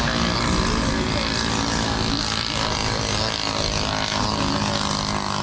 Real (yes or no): yes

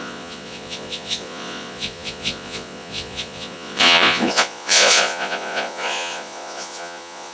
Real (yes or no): no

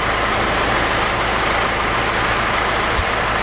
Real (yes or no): yes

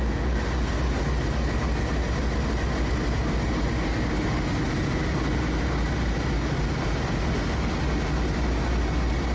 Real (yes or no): yes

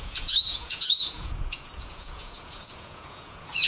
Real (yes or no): no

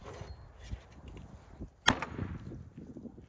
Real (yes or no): yes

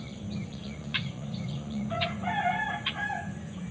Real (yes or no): no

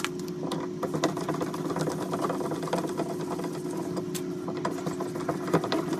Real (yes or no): yes